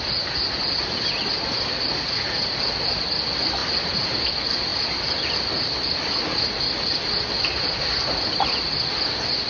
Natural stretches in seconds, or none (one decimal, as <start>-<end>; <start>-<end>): 0.0-9.5